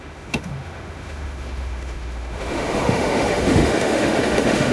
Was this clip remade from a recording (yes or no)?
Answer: yes